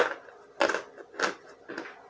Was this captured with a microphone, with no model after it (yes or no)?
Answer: yes